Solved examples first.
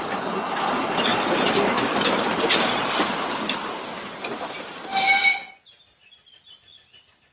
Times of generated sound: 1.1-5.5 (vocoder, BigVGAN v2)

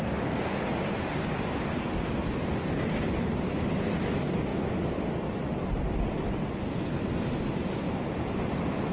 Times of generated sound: none

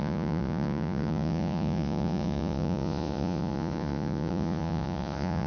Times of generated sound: 0.0-5.5 (vocoder, Vocos)

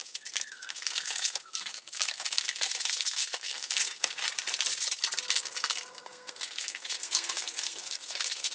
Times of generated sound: 0.0-4.2 (codec, SNAC); 5.3-8.5

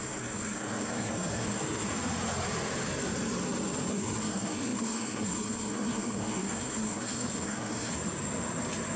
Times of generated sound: 0.0-1.9 (codec, SNAC); 3.9-7.9

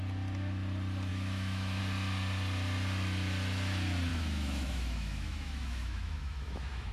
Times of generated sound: 1.1-1.8 (autoencoder, DAC-VAE); 4.1-6.9

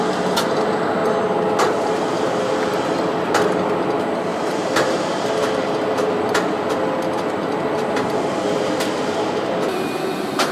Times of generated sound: 4.3-5.3 (vocoder, BigVGAN v2)

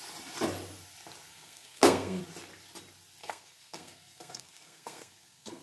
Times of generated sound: 1.3-2.2 (codec, SNAC); 3.2-5.6